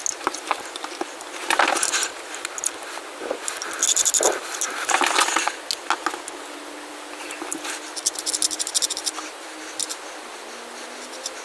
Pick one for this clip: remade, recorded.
recorded